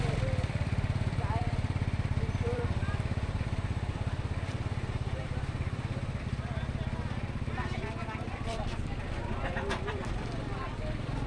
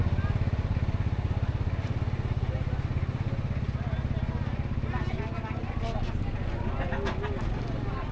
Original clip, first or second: second